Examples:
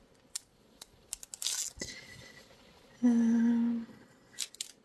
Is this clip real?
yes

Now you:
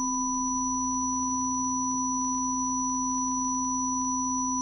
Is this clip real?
yes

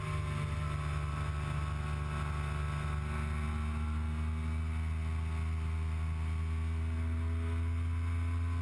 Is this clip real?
yes